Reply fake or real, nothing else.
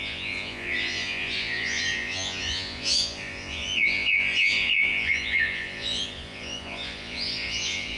fake